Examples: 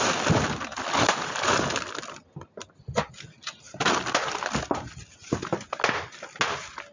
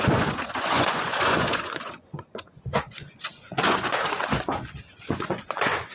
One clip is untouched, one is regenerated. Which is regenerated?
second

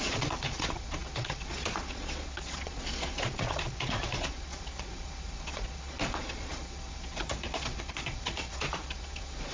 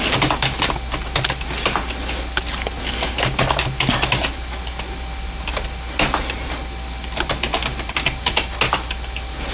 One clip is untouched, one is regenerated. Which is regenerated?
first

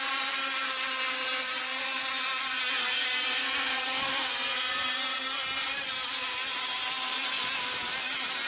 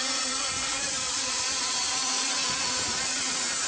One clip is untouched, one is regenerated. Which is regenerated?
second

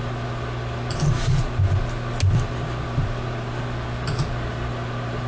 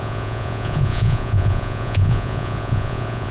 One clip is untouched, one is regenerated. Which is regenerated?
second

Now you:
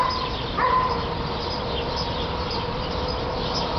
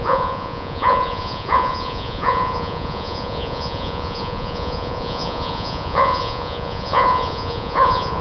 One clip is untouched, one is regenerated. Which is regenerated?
second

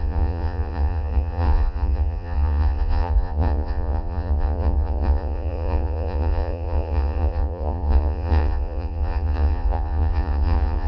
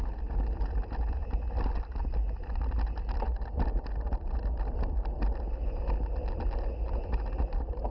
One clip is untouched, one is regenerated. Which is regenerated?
first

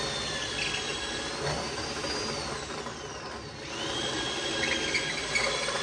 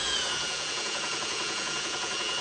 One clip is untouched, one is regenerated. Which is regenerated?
second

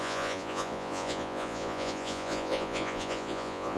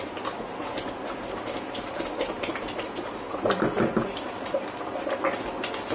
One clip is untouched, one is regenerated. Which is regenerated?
first